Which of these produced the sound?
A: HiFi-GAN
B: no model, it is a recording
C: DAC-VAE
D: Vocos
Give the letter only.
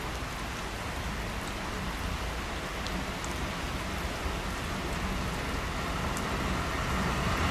B